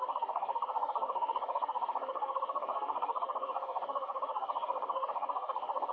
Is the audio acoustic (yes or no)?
no